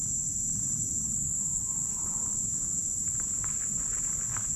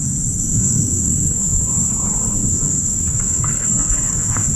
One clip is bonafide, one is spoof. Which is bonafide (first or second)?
first